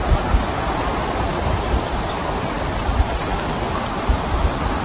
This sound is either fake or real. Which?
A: real